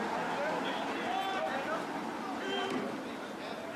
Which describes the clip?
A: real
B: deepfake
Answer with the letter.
A